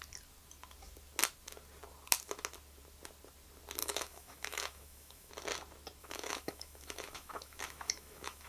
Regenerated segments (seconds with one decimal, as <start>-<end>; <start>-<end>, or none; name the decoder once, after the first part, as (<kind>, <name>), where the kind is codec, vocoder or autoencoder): 3.8-5.3 (autoencoder, DAC-VAE); 6.0-8.5